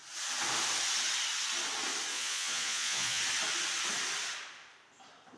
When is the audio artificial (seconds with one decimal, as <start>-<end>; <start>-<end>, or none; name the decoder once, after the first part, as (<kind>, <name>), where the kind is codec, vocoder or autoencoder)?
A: 2.1-3.2 (vocoder, Vocos)